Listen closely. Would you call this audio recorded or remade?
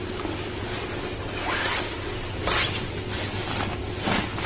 recorded